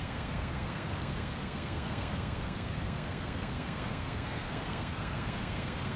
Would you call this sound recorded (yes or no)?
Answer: no